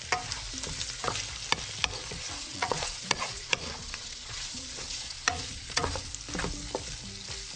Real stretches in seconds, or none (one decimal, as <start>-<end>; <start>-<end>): 0.0-2.0; 6.1-7.6